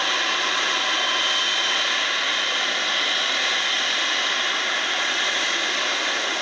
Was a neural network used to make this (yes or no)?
no